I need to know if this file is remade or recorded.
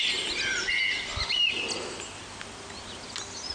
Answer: recorded